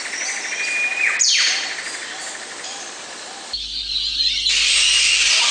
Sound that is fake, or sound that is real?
real